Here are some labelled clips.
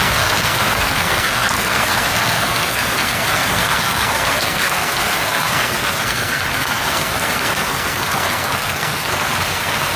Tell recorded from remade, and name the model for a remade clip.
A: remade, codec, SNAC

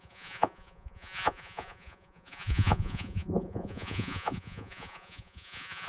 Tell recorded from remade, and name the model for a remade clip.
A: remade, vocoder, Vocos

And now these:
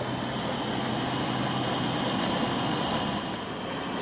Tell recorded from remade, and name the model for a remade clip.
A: recorded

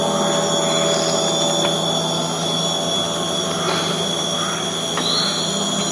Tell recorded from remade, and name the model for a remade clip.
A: recorded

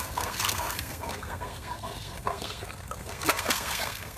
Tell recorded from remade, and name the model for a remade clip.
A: remade, codec, SNAC